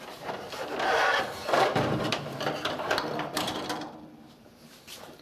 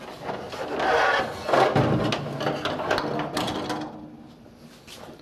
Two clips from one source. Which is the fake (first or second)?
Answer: first